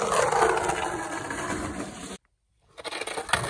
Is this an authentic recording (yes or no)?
yes